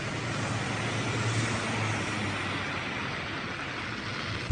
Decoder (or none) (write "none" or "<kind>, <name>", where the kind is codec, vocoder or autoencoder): none